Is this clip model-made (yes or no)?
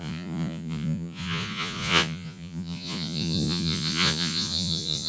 yes